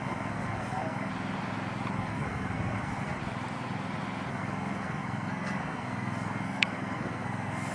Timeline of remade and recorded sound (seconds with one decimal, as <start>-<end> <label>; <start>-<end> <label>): 0.0-1.1 remade; 1.1-1.9 recorded; 1.9-3.2 remade; 3.2-4.3 recorded; 4.3-7.7 remade